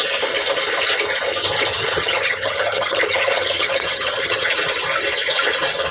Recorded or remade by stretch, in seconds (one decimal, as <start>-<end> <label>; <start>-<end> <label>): 0.0-1.7 recorded; 1.7-4.5 remade; 4.5-5.9 recorded

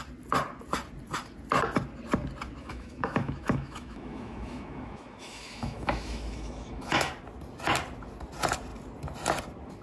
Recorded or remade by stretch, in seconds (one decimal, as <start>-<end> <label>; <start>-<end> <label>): 0.0-2.6 recorded; 2.6-7.1 remade; 7.1-9.8 recorded

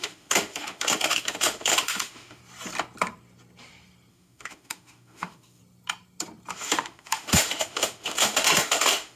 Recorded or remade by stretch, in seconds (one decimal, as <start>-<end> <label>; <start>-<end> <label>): 0.0-2.4 remade; 2.4-4.1 recorded; 4.1-5.6 remade; 5.6-6.5 recorded; 6.5-9.2 remade

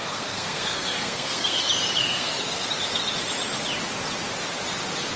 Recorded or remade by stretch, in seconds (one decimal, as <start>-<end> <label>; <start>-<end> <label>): 0.0-1.6 remade; 1.6-2.0 recorded; 2.0-2.7 remade; 2.7-5.2 recorded

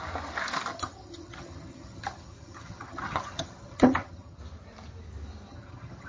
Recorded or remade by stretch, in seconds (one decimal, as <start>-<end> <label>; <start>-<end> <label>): 0.0-0.7 recorded; 0.7-4.4 remade; 4.4-5.5 recorded; 5.5-6.1 remade

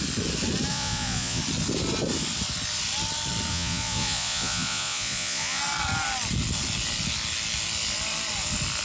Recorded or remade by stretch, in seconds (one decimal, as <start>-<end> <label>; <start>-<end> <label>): 0.0-0.7 recorded; 0.7-1.4 remade; 1.4-3.5 recorded; 3.5-5.6 remade; 5.6-8.8 recorded

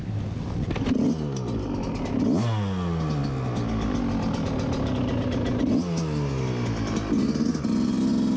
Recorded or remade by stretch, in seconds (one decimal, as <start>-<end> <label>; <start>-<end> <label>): 0.0-8.4 recorded